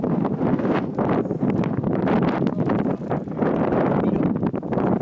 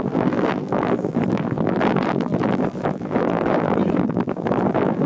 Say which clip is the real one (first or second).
first